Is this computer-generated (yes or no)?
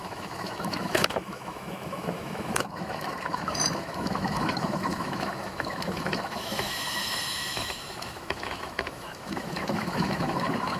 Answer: yes